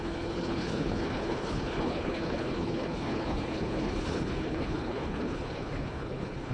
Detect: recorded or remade remade